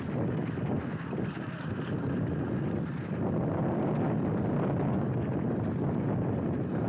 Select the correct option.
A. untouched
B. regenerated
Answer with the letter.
A